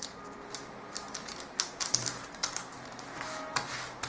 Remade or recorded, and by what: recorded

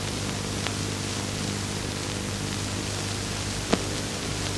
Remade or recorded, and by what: recorded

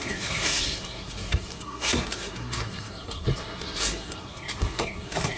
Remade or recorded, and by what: remade, codec, SNAC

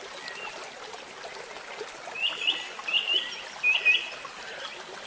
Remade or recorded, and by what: recorded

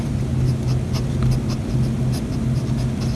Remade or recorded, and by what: recorded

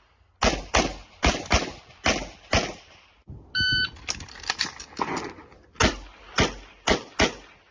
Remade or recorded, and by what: recorded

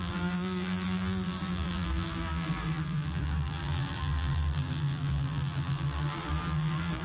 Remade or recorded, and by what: remade, vocoder, BigVGAN v2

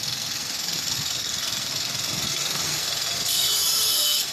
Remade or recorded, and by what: remade, codec, SNAC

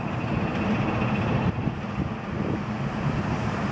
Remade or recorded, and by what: recorded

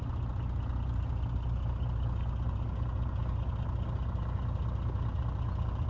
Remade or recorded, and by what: recorded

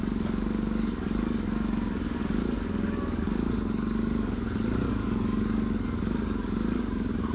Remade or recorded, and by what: remade, codec, DAC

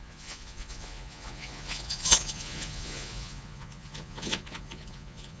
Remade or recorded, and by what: remade, vocoder, Vocos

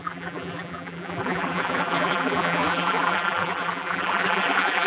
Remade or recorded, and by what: remade, vocoder, BigVGAN v2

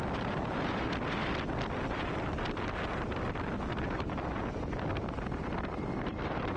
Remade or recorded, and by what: remade, vocoder, BigVGAN v2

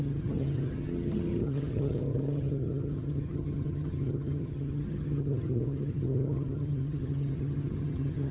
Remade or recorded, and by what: remade, vocoder, HiFi-GAN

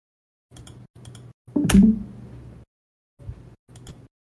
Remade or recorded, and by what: recorded